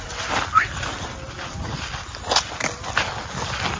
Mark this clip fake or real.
real